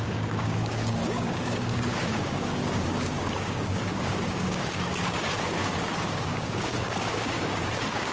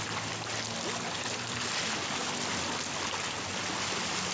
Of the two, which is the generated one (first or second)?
first